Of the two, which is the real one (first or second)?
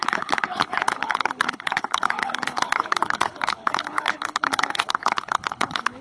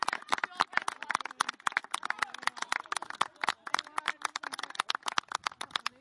second